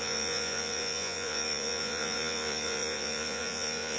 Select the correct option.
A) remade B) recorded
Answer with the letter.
A